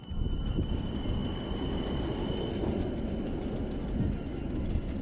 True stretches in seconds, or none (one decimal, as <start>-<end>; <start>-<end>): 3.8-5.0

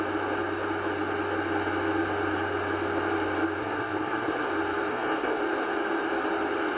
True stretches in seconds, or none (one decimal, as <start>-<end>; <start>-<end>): 0.0-3.6; 4.5-4.9; 5.4-6.8

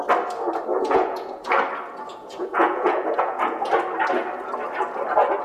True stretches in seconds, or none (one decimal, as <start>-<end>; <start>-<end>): 0.0-0.7; 1.5-2.1; 3.7-5.4